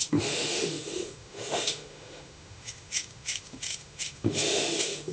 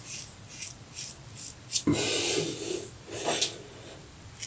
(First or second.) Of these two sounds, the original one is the second